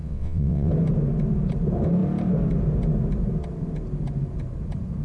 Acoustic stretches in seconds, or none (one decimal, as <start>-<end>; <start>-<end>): 0.7-5.0

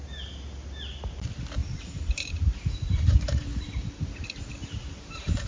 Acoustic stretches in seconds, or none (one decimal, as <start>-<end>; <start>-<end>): 0.0-1.6; 3.9-4.6